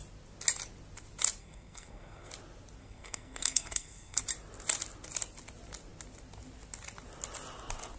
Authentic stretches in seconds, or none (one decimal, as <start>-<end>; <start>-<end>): 0.0-1.4; 2.3-2.8; 4.2-8.0